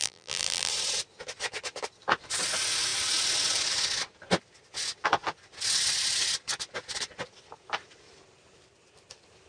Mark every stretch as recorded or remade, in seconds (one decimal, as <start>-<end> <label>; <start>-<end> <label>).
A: 0.0-0.7 remade; 0.7-9.5 recorded